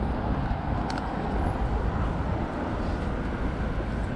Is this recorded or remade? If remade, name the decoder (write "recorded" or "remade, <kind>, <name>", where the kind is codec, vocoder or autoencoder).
recorded